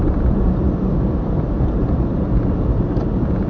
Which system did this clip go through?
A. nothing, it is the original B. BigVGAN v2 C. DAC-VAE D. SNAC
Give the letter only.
B